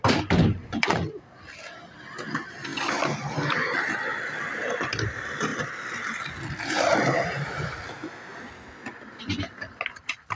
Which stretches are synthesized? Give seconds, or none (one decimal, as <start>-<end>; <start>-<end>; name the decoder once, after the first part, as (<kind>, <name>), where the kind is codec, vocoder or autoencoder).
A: 0.6-1.2 (vocoder, Vocos)